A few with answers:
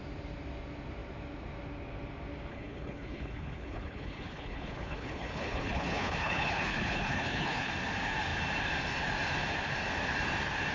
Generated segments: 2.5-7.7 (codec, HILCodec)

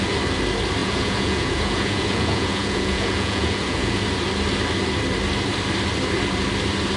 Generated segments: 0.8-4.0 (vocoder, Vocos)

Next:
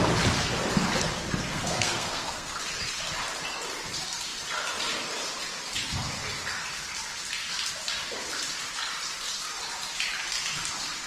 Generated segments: 1.5-2.6 (codec, SNAC)